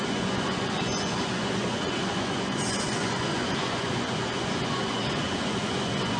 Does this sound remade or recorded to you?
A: remade